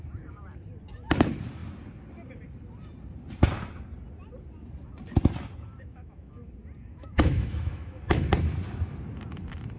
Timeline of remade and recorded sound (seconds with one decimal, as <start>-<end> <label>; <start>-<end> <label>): 0.0-5.9 recorded; 5.9-6.5 remade; 6.5-6.9 recorded; 6.9-8.3 remade; 8.3-9.8 recorded

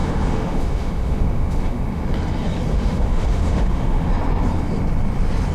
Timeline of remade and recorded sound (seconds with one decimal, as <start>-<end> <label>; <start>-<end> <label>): 0.0-2.0 remade; 2.0-2.7 recorded; 2.7-4.1 remade; 4.1-5.5 recorded

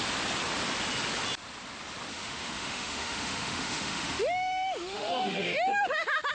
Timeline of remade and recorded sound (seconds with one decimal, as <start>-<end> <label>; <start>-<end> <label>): 0.0-2.1 recorded; 2.1-6.3 remade

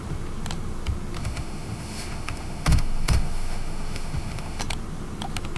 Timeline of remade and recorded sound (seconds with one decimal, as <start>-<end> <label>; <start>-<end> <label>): 0.0-1.2 recorded; 1.2-4.6 remade; 4.6-5.6 recorded

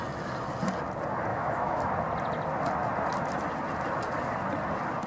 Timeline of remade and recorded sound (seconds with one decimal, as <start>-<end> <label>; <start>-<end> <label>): 0.0-1.3 recorded; 1.3-1.8 remade; 1.8-5.1 recorded

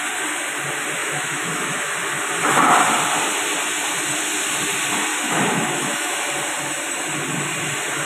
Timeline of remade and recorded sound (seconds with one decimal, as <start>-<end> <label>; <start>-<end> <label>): 0.0-1.0 recorded; 1.0-1.9 remade; 1.9-5.1 recorded; 5.1-6.3 remade; 6.3-8.1 recorded

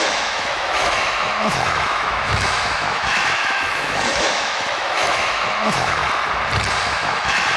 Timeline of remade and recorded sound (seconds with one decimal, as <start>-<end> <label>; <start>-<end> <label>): 0.0-6.0 remade; 6.0-6.8 recorded; 6.8-7.6 remade